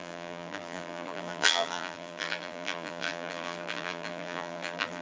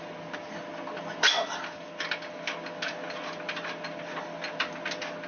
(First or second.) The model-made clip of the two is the first